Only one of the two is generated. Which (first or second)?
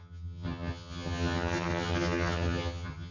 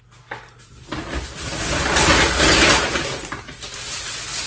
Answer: first